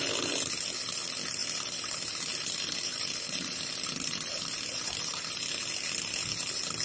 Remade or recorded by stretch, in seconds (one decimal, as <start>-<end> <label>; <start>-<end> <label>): 0.0-1.4 recorded; 1.4-5.5 remade; 5.5-6.8 recorded